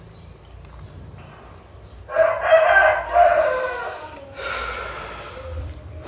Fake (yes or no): yes